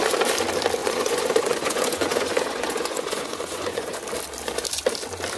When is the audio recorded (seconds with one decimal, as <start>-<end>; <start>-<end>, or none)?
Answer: 0.0-0.8; 4.0-5.4